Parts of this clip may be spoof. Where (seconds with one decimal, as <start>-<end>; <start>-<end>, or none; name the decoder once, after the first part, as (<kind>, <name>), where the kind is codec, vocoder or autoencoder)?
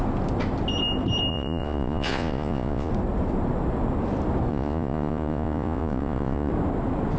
1.3-2.9 (vocoder, Vocos); 4.5-6.5